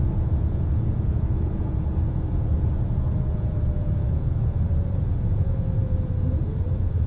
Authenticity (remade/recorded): remade